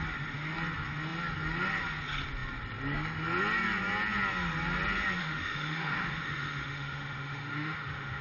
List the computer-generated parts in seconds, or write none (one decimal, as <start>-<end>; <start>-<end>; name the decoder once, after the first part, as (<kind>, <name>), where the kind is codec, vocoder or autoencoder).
5.2-8.2 (autoencoder, DAC-VAE)